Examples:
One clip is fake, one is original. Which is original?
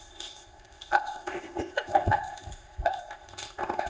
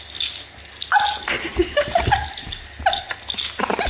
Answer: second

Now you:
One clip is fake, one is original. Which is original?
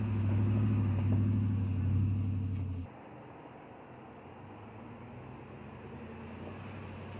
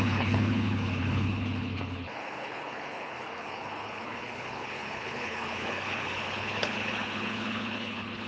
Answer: first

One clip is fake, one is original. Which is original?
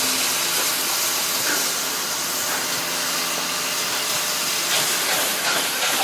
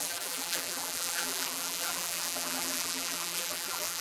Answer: first